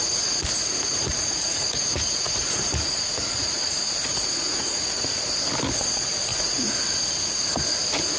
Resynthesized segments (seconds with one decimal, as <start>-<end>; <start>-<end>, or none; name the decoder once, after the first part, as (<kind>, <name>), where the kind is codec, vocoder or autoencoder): 1.1-5.3 (vocoder, Vocos); 6.3-6.8